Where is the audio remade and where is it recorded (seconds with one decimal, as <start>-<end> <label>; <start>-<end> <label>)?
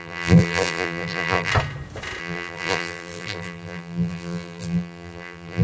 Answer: 0.0-1.5 remade; 1.5-2.2 recorded; 2.2-5.6 remade